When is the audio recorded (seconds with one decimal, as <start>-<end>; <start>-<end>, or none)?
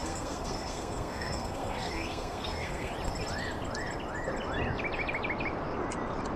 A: 2.9-6.4